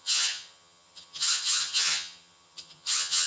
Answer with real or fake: fake